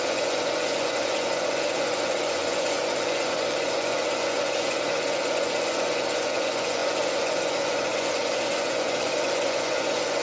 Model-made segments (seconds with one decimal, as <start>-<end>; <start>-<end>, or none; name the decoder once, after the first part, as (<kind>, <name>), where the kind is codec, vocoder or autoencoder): 0.0-10.2 (vocoder, Vocos)